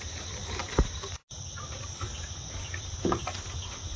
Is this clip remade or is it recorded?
recorded